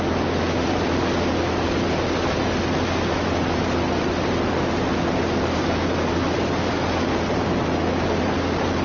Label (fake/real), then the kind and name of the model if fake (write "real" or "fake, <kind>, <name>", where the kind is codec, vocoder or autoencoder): real